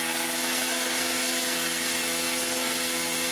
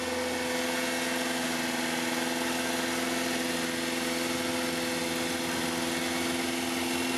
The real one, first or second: second